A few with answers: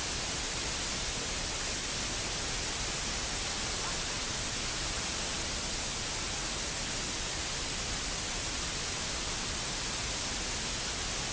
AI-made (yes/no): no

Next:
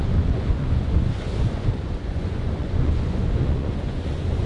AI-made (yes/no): yes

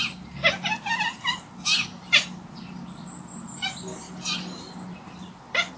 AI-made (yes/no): no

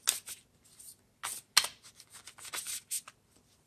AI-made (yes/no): no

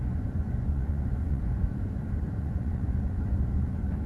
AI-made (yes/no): yes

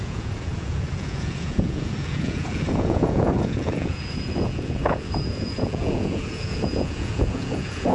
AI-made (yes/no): yes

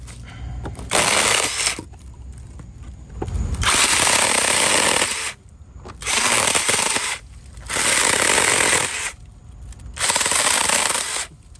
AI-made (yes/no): no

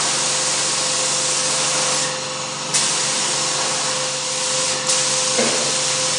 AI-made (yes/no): no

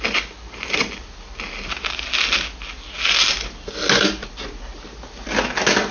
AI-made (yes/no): no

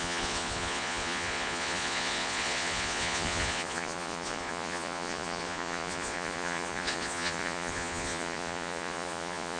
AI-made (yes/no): yes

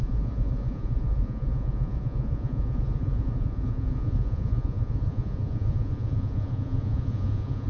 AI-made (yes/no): yes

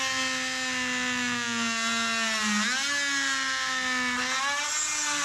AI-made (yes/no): no